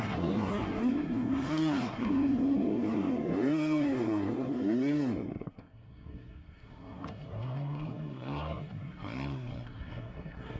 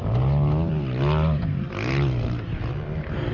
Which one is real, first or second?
second